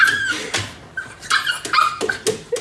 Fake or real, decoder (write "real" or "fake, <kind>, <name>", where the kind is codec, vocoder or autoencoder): real